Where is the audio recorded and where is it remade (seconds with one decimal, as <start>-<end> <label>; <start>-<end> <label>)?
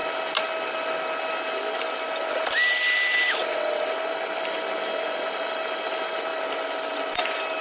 0.0-7.6 recorded